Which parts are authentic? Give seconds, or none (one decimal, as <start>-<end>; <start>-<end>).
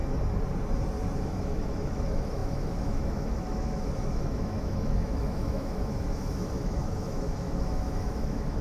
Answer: 0.0-1.2